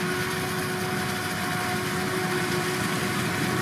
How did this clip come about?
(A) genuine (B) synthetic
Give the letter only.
A